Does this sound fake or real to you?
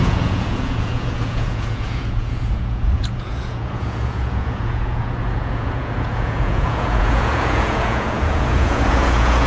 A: fake